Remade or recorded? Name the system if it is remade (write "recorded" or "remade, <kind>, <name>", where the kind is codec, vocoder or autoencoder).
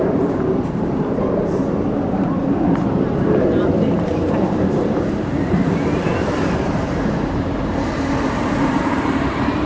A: remade, vocoder, BigVGAN v2